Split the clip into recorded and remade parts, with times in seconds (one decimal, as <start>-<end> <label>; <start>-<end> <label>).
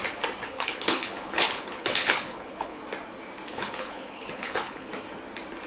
0.0-0.4 recorded; 0.4-2.8 remade; 2.8-3.5 recorded; 3.5-4.9 remade; 4.9-5.7 recorded